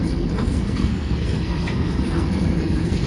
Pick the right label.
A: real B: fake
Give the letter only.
B